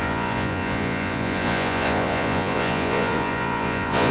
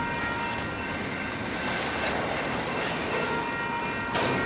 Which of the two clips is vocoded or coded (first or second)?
first